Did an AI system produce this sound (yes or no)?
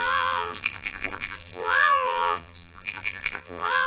yes